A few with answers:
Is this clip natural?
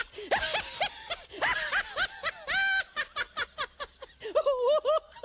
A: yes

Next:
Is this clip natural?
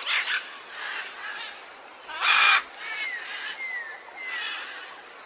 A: yes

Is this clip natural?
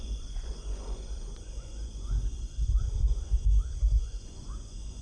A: no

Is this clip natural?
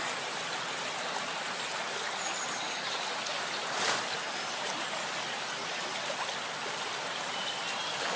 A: yes